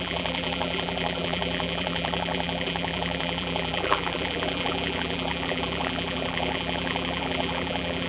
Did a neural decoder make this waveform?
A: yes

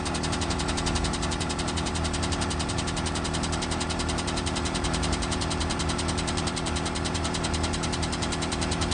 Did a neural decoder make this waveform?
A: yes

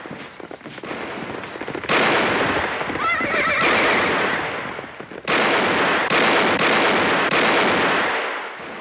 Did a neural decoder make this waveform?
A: no